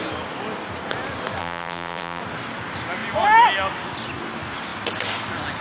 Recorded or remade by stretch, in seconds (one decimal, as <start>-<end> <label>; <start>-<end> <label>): 0.0-1.4 recorded; 1.4-2.2 remade; 2.2-5.6 recorded